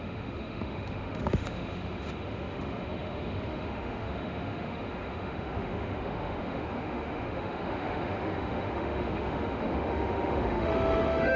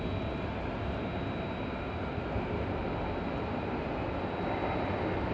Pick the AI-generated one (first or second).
first